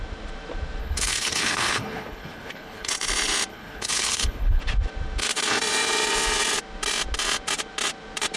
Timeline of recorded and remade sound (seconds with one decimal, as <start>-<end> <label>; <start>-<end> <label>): 0.0-0.8 recorded; 0.8-2.9 remade; 2.9-3.5 recorded; 3.5-4.6 remade; 4.6-8.4 recorded